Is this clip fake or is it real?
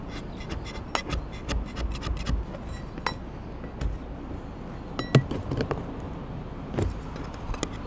real